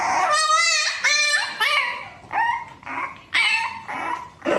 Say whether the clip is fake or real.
real